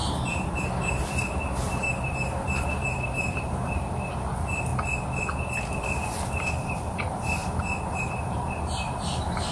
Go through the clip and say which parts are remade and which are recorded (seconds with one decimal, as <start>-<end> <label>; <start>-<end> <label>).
0.0-4.7 remade; 4.7-6.3 recorded; 6.3-7.4 remade; 7.4-8.0 recorded; 8.0-9.5 remade